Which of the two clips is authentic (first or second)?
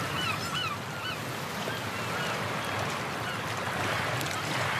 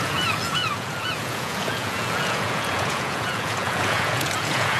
first